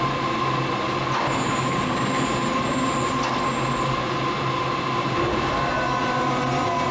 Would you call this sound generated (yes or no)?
no